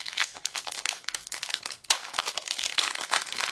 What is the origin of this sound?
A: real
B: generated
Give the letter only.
B